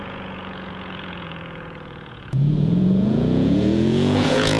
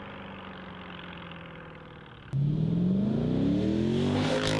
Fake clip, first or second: first